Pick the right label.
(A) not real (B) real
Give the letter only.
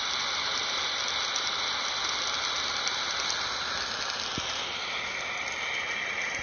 B